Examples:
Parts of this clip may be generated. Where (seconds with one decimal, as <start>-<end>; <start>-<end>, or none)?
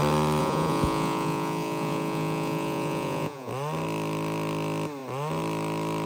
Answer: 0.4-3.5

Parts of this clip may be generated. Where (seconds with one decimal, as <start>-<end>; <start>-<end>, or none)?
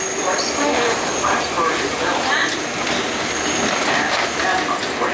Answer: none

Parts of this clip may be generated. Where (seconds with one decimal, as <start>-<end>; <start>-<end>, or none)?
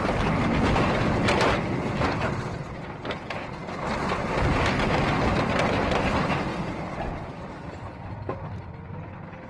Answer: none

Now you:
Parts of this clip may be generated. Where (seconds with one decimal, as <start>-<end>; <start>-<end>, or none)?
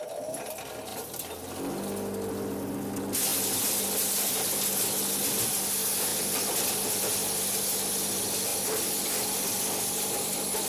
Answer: none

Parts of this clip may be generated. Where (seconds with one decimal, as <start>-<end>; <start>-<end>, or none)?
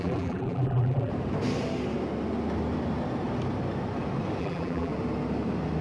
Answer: 0.0-1.1; 4.4-4.9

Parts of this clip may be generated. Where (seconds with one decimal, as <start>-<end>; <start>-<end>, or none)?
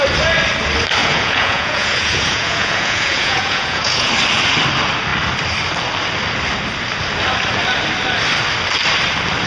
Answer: 1.0-4.1